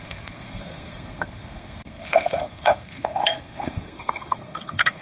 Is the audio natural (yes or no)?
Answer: no